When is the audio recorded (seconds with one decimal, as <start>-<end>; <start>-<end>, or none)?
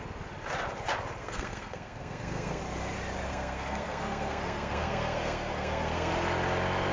0.0-1.2; 2.6-3.3; 6.1-6.9